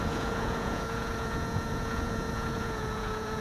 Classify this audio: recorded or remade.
remade